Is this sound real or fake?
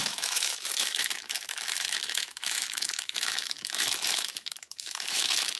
fake